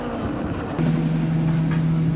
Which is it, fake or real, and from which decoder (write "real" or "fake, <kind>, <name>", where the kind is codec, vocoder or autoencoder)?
real